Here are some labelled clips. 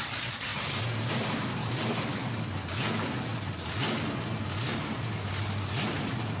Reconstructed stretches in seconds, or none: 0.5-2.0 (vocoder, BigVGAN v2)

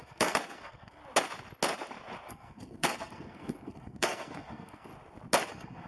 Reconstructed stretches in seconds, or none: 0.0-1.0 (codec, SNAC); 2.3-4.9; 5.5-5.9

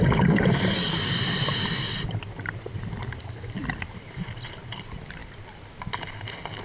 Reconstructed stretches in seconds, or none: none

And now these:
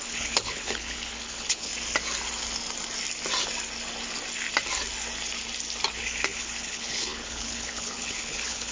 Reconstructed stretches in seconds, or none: 0.0-1.7 (codec, HILCodec); 6.0-8.7

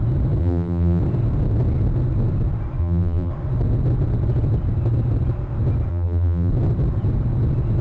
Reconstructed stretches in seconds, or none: 0.4-1.0 (vocoder, BigVGAN v2); 2.8-3.3; 5.9-6.5

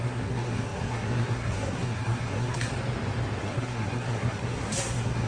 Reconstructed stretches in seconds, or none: 0.0-2.7 (codec, SNAC); 3.4-5.3